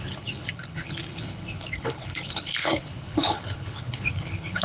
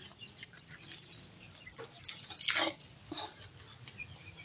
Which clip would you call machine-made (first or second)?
first